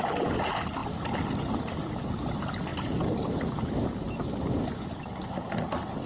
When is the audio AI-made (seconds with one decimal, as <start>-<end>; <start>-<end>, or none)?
2.7-4.9